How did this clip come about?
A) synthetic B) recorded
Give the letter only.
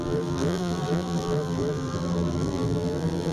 A